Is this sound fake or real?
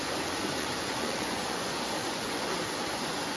fake